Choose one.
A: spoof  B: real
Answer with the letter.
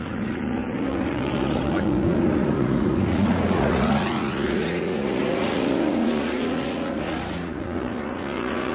A